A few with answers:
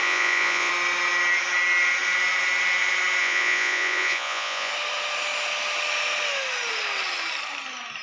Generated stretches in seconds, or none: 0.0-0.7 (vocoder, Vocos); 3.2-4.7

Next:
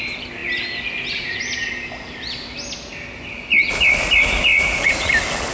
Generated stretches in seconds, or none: 4.5-5.1 (vocoder, Vocos)

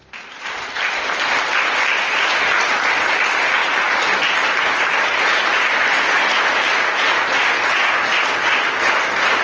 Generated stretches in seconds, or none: none